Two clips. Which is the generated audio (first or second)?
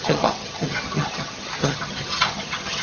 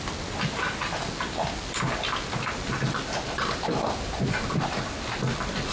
first